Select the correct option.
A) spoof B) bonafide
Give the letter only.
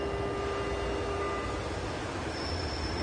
B